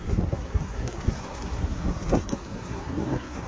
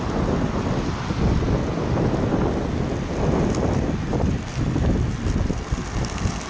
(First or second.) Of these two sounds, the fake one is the first